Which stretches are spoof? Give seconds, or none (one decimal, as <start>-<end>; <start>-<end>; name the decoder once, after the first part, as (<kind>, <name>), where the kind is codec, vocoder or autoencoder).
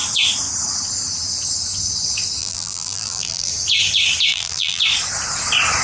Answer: 2.4-3.5 (vocoder, BigVGAN v2); 4.3-4.8